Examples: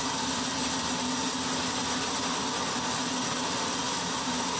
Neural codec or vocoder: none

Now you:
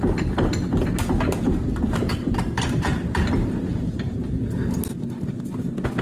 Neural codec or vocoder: none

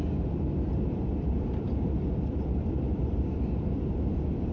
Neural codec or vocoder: vocoder, BigVGAN v2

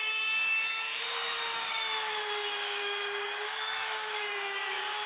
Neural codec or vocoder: codec, DAC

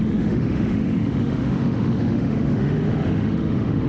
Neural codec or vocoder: autoencoder, DAC-VAE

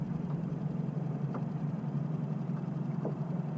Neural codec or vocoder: vocoder, BigVGAN v2